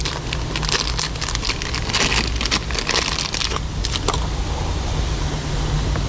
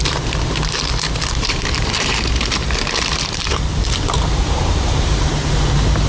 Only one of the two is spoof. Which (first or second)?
second